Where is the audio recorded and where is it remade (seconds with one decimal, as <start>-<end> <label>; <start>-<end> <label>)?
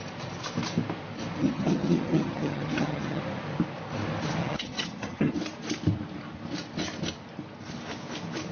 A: 0.0-1.4 recorded; 1.4-3.2 remade; 3.2-4.4 recorded; 4.4-5.3 remade; 5.3-8.5 recorded